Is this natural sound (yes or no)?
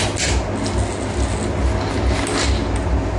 yes